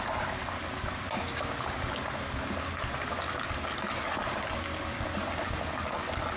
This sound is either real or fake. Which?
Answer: real